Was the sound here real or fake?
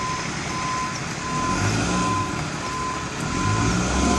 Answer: real